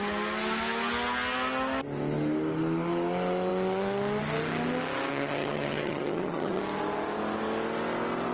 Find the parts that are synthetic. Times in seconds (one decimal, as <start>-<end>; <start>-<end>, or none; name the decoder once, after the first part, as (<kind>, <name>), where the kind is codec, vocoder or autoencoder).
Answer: 5.1-6.6 (vocoder, HiFi-GAN)